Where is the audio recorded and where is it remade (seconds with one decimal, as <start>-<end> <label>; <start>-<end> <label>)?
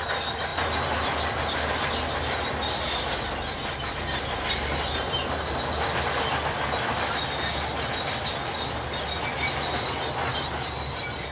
0.0-11.3 recorded